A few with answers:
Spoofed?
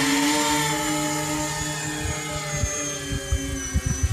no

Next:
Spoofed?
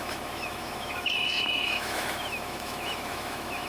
yes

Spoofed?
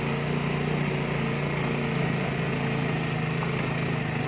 no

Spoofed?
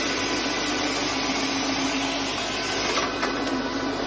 no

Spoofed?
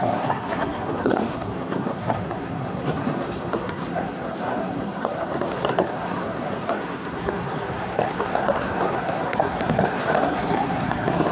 yes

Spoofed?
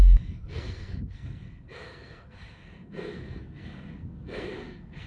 yes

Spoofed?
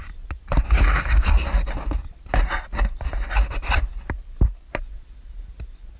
no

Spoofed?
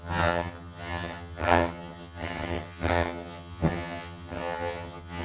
yes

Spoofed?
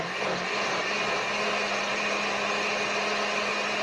no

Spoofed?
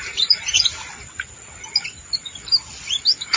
no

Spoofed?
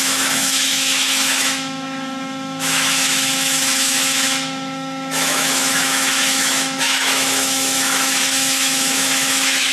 yes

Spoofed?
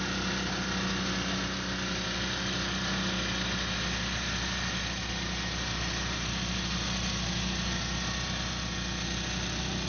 no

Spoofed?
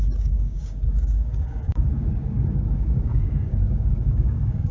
yes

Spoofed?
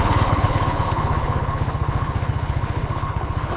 yes